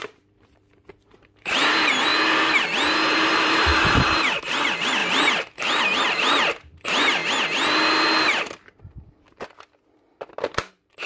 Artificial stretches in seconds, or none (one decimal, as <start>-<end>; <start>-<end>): 0.0-2.1; 3.1-7.2; 10.7-11.1